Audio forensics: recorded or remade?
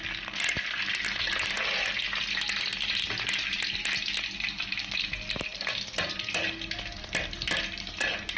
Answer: recorded